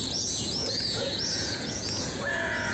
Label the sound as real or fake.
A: fake